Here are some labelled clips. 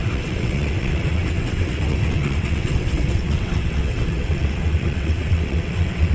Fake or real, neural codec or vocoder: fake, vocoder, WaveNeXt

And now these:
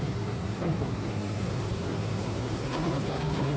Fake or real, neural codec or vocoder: fake, codec, SNAC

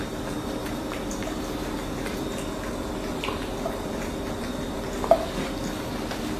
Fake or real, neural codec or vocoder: fake, vocoder, BigVGAN v2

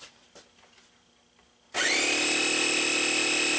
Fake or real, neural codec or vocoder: real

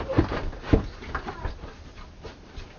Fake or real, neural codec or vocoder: real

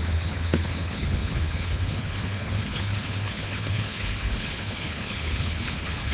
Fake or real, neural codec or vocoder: fake, codec, HILCodec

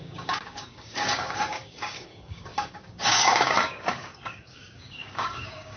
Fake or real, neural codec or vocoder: fake, codec, DAC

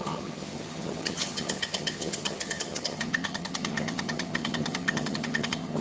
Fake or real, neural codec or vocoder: fake, vocoder, HiFi-GAN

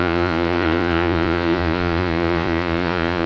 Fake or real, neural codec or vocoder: fake, vocoder, Vocos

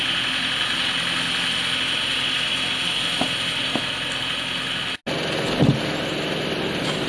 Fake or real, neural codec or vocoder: real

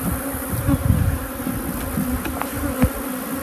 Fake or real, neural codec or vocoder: real